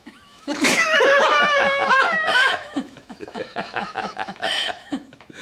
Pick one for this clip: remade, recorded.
remade